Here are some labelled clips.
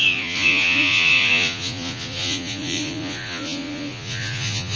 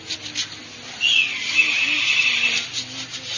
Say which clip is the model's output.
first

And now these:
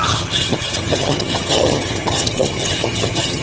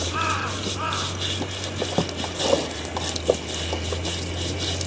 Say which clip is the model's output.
first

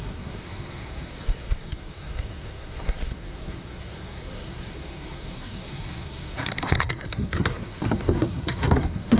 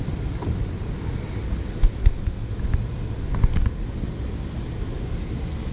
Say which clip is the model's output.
first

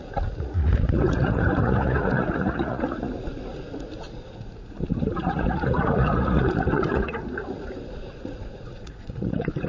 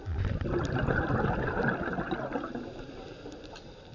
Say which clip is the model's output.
first